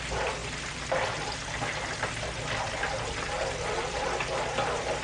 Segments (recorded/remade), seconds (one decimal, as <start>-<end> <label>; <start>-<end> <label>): 0.0-5.0 recorded